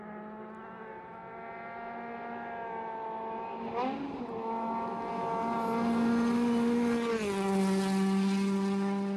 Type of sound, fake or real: real